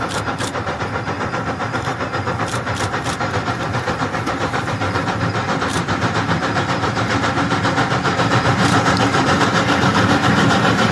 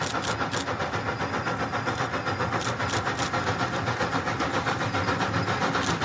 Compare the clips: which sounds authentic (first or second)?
second